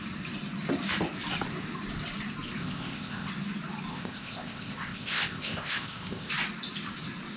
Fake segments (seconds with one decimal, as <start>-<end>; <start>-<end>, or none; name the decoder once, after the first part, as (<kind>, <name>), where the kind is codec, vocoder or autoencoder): 2.6-3.3 (codec, ZipCodec); 3.9-6.3